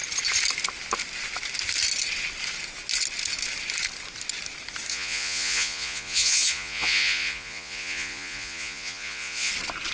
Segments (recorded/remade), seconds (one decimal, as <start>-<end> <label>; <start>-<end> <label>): 0.0-4.9 recorded; 4.9-9.5 remade; 9.5-9.9 recorded